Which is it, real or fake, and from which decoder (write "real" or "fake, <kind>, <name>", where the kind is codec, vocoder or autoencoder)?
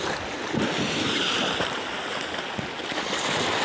real